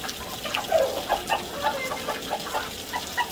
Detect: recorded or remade recorded